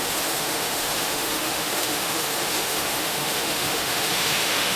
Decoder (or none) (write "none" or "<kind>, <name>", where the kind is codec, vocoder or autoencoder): autoencoder, DAC-VAE